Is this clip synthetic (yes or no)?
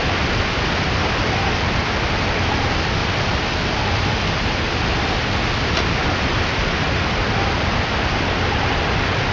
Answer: no